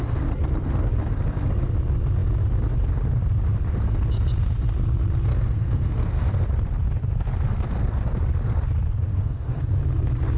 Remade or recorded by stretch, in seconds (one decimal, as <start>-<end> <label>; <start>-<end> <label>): 0.0-5.3 recorded; 5.3-6.3 remade; 6.3-9.1 recorded; 9.1-9.6 remade; 9.6-10.4 recorded